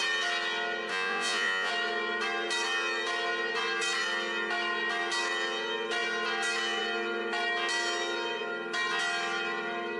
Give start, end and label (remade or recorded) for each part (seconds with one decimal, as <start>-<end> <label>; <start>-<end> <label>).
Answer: 0.0-0.9 recorded; 0.9-1.7 remade; 1.7-10.0 recorded